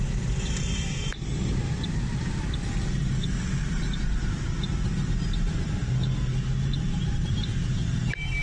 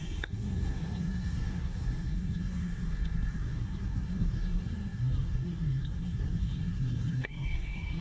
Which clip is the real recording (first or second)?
first